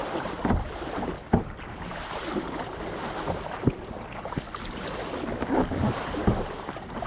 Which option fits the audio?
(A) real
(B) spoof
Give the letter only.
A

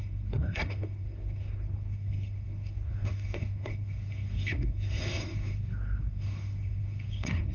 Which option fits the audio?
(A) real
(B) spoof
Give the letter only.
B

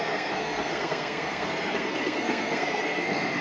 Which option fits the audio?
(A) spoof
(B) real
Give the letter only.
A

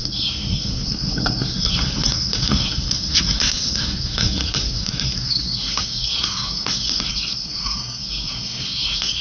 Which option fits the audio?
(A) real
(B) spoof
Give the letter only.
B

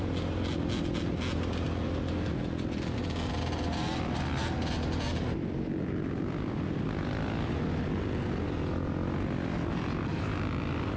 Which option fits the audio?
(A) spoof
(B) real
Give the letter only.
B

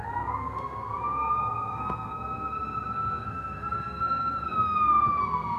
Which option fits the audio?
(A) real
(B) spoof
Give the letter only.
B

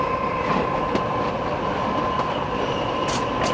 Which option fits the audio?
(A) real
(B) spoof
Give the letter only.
A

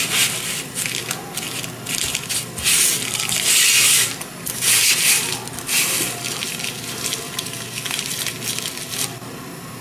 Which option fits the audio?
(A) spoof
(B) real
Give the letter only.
B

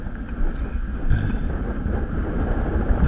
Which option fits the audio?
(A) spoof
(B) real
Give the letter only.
B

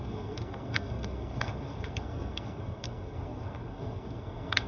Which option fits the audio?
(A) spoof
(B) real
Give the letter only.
A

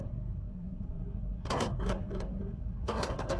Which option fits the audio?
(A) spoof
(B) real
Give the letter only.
A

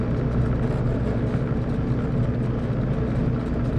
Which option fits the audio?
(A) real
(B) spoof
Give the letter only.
A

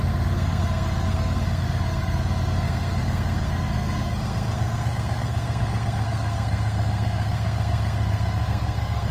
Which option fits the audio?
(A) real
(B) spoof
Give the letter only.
B